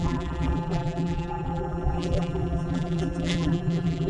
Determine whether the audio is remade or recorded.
remade